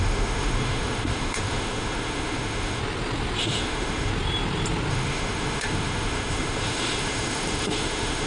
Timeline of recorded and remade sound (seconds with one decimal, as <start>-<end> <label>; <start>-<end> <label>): 0.0-2.8 remade; 2.8-3.4 recorded; 3.4-4.1 remade; 4.1-4.9 recorded; 4.9-8.3 remade